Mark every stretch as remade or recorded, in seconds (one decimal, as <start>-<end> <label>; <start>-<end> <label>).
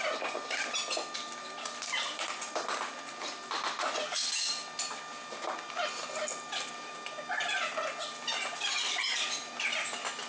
0.0-10.3 recorded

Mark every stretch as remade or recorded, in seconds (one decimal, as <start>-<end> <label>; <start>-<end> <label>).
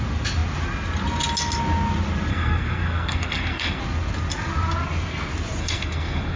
0.0-2.3 recorded; 2.3-3.8 remade; 3.8-5.6 recorded; 5.6-6.4 remade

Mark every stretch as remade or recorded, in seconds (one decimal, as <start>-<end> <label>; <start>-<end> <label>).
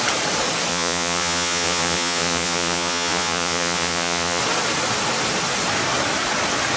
0.0-0.7 recorded; 0.7-4.4 remade; 4.4-6.8 recorded